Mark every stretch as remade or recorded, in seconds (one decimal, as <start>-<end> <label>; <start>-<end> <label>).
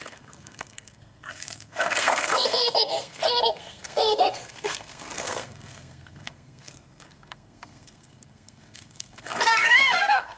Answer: 0.0-10.4 remade